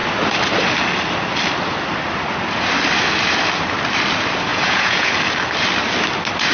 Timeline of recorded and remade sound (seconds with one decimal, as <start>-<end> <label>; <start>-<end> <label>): 0.0-4.5 recorded; 4.5-5.1 remade; 5.1-6.5 recorded